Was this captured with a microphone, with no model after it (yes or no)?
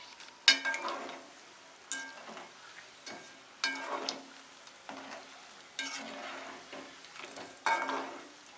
yes